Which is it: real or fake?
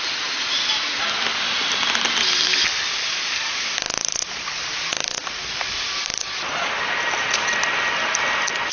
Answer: real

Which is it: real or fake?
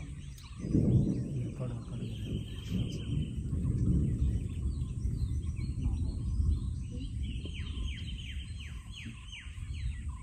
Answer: real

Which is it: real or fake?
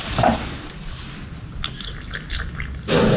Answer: real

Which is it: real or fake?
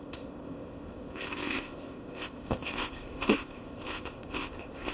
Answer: fake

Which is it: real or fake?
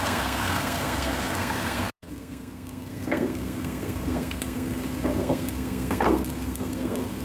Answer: fake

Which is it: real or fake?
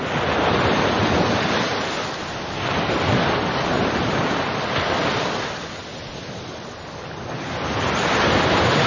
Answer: real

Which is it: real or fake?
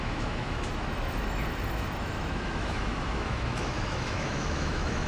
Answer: fake